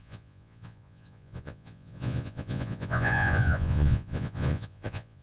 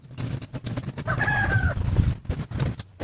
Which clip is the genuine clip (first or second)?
second